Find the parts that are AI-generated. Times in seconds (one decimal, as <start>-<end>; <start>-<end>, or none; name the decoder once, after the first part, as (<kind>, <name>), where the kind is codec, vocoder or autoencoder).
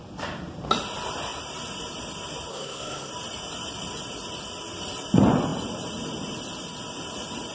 2.5-3.1 (codec, SNAC)